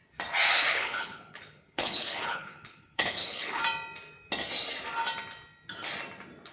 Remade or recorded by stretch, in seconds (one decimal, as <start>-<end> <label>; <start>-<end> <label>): 0.0-0.7 recorded; 0.7-3.6 remade; 3.6-6.5 recorded